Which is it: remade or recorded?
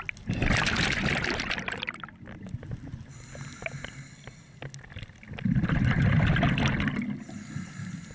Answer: recorded